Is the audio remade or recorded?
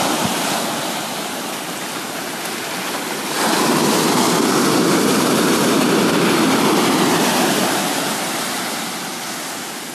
recorded